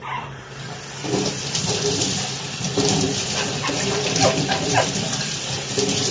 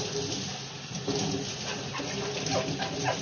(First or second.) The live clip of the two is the second